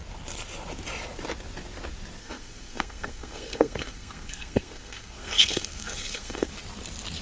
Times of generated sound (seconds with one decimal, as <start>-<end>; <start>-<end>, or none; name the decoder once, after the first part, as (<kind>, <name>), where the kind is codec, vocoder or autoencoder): 2.2-6.5 (codec, SNAC)